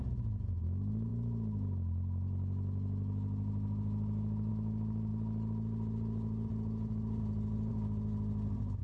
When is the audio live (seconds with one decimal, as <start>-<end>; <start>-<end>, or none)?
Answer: 0.0-8.8

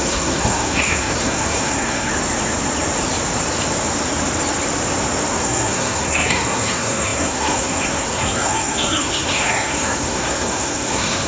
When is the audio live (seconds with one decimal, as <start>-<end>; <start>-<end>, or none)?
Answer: 2.1-5.4